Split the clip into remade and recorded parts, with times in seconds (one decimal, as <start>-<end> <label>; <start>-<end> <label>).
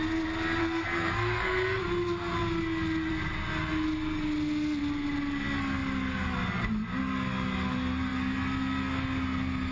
0.0-0.6 recorded; 0.6-1.8 remade; 1.8-9.7 recorded